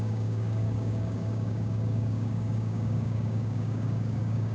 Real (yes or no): no